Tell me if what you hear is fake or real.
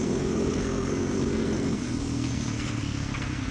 fake